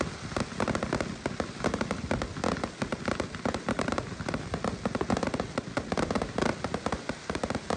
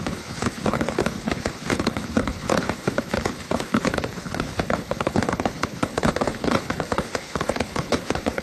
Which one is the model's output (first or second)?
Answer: second